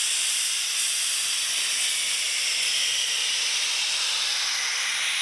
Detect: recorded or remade recorded